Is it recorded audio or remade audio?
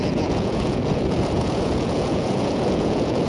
remade